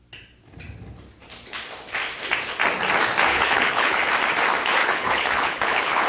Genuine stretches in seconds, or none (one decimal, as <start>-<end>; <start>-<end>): 0.0-3.3; 4.1-4.8